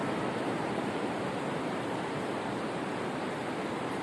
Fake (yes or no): yes